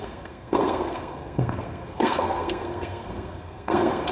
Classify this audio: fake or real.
fake